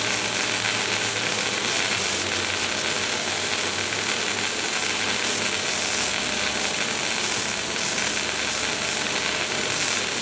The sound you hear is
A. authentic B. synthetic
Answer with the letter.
A